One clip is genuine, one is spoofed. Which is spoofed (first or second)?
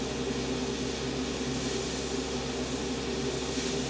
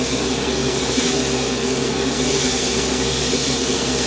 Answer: second